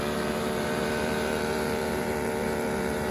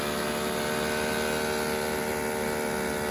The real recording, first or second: second